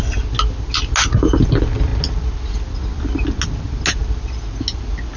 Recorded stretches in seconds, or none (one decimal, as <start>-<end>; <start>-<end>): 0.0-5.2